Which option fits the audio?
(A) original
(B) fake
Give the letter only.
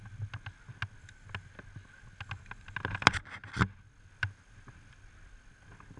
A